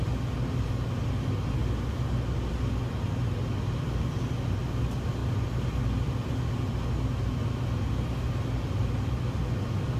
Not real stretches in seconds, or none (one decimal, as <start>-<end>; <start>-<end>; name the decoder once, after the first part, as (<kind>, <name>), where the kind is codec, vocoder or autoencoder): none